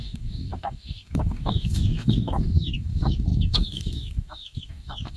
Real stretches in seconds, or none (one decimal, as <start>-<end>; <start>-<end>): none